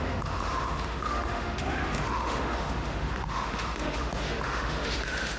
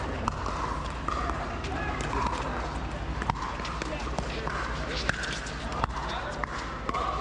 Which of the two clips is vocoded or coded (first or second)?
first